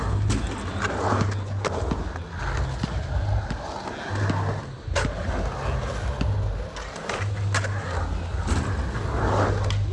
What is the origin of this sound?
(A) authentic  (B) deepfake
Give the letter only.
A